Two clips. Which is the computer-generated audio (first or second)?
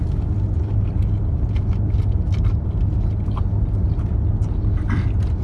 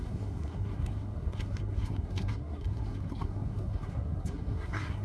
second